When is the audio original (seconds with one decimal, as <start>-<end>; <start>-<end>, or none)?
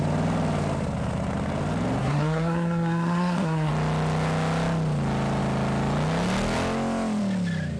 0.0-2.0; 3.7-7.8